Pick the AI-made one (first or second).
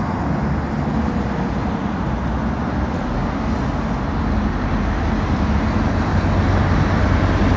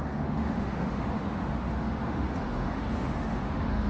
second